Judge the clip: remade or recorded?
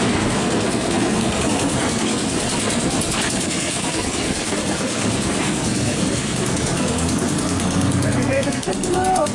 remade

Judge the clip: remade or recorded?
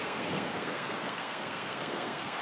remade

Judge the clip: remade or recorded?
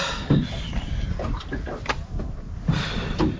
recorded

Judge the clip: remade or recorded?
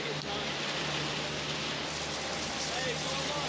recorded